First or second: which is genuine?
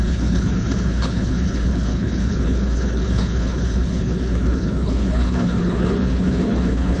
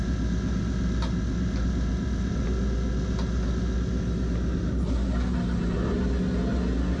second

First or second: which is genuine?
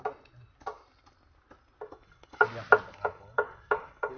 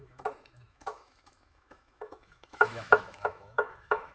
first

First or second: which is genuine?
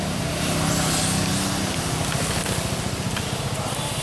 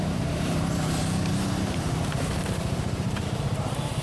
first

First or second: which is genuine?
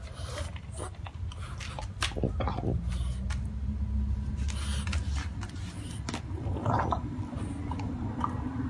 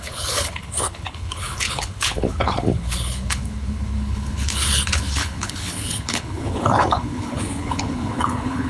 first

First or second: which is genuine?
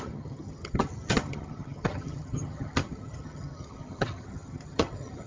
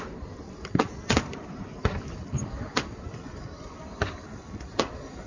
second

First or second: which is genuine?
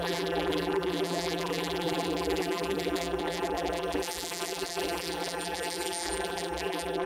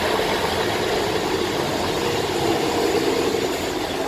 second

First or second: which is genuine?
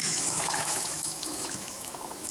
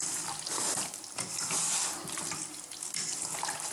second